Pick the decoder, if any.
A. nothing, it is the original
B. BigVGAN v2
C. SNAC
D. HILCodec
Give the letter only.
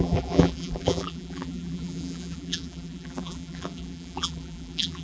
B